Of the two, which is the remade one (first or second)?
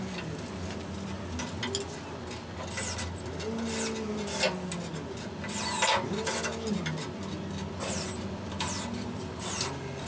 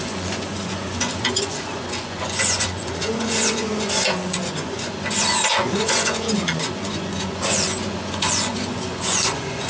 second